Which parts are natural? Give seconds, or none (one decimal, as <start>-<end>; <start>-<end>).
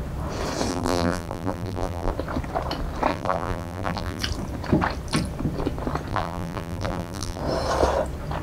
0.0-0.7; 2.1-3.1; 4.2-6.1; 7.4-8.4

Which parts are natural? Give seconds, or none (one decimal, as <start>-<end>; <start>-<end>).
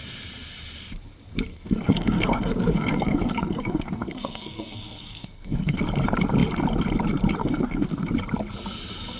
0.0-1.5; 5.8-7.4; 8.1-9.2